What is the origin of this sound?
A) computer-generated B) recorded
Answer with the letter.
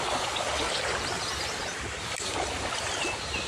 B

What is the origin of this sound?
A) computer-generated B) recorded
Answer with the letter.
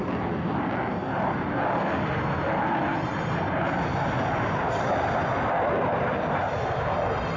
B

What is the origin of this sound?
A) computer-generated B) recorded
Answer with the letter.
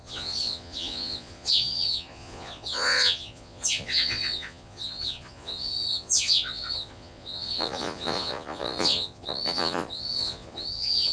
A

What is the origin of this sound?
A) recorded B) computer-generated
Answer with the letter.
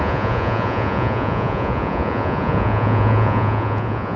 B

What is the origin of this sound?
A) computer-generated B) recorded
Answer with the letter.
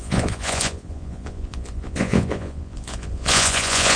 A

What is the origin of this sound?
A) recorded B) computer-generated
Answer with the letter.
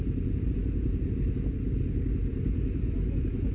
A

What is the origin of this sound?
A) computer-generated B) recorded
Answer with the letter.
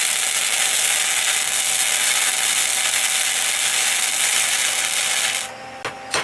B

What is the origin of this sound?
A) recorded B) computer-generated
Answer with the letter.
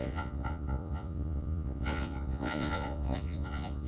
B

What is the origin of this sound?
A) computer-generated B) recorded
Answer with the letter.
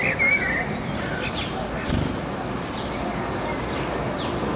B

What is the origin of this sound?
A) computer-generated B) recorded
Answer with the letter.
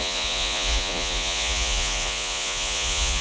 A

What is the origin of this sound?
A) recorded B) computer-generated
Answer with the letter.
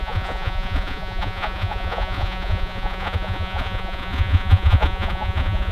B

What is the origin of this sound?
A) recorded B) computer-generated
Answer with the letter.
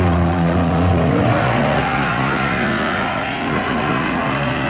B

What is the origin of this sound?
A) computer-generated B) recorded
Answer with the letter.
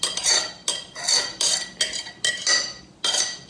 B